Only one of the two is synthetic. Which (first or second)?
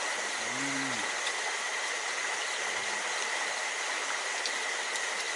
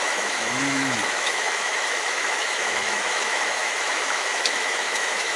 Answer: second